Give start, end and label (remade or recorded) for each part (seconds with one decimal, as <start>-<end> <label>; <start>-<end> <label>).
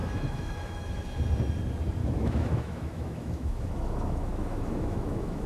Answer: 0.0-1.0 remade; 1.0-2.0 recorded; 2.0-5.5 remade